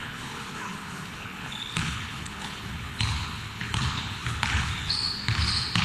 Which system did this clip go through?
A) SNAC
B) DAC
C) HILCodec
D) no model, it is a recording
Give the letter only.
C